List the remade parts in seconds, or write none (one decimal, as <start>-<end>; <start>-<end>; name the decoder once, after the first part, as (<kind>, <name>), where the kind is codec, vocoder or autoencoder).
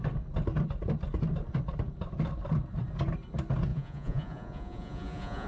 3.7-5.5 (vocoder, Vocos)